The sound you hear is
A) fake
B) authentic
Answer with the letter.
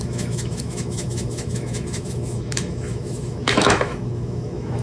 A